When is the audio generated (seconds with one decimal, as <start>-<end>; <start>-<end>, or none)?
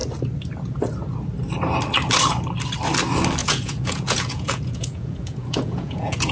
3.4-6.3